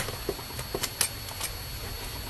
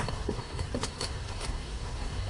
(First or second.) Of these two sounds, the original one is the first